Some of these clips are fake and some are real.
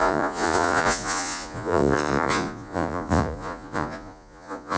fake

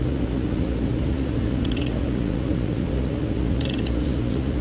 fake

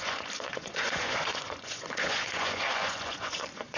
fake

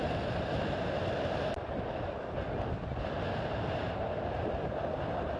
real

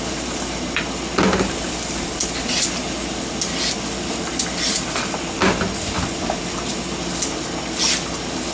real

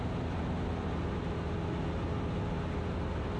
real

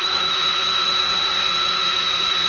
fake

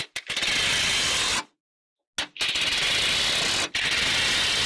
real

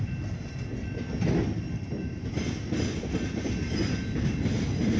real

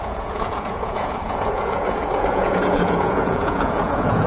fake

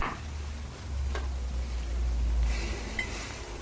real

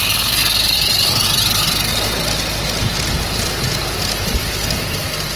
real